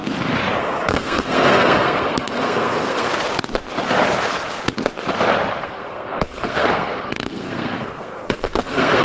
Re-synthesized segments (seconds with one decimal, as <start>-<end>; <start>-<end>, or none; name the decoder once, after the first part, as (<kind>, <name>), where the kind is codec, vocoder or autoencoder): 0.6-3.1 (codec, SNAC); 5.6-9.0